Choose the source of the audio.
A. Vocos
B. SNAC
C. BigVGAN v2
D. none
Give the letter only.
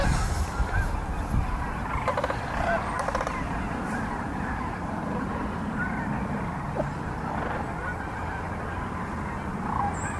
D